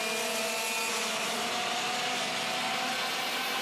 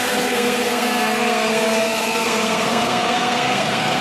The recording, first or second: first